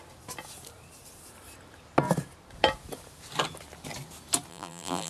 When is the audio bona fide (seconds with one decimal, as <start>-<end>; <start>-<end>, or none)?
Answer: 0.0-4.5